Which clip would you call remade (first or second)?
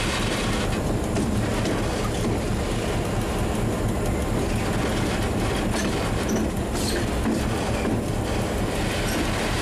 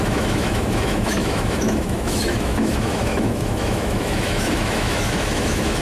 second